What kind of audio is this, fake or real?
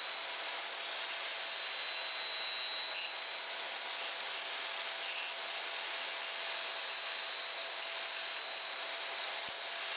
real